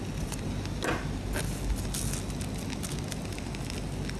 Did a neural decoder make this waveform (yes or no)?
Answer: no